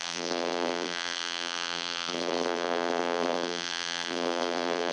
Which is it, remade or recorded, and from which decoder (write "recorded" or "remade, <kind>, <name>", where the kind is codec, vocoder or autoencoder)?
remade, vocoder, BigVGAN v2